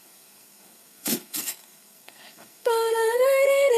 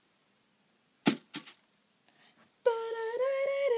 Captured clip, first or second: second